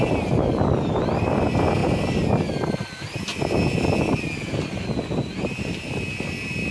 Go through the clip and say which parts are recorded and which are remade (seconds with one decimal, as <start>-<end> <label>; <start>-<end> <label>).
0.0-6.7 recorded